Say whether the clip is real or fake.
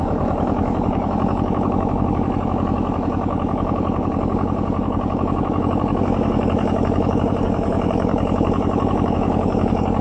fake